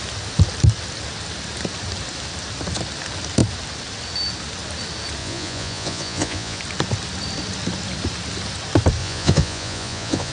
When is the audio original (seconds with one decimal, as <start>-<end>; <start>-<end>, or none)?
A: 0.0-5.2; 6.6-9.0